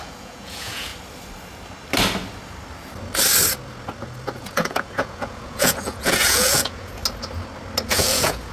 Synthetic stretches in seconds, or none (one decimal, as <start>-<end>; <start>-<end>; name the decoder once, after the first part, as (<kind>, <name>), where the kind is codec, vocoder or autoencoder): 0.0-0.9 (vocoder, Vocos); 4.4-7.0; 7.9-8.5